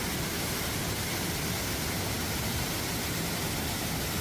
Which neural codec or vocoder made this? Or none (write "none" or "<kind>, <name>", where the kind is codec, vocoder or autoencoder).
none